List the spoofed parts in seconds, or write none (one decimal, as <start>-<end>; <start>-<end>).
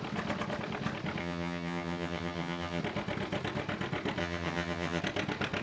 1.2-2.8; 4.2-5.0